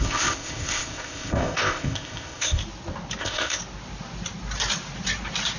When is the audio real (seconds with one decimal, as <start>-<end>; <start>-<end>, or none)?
2.6-3.2; 3.6-5.6